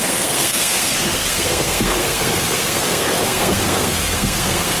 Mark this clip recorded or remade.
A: remade